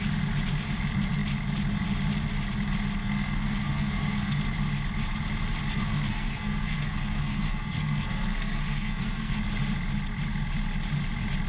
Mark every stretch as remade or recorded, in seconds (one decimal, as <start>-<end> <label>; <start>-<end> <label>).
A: 0.0-3.0 recorded; 3.0-4.4 remade; 4.4-5.7 recorded; 5.7-9.4 remade; 9.4-11.5 recorded